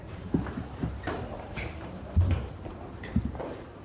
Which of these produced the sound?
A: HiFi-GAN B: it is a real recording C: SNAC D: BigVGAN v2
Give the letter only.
D